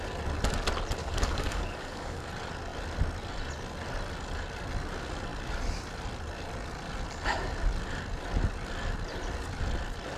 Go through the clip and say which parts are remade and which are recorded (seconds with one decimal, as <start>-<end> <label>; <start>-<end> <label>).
0.0-1.0 recorded; 1.0-2.3 remade; 2.3-10.2 recorded